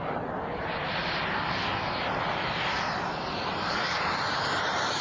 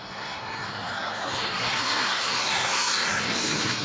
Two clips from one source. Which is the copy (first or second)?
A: second